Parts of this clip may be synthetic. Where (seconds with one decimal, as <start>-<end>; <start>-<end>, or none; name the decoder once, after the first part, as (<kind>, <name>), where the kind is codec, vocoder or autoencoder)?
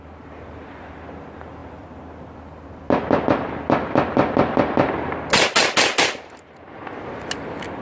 none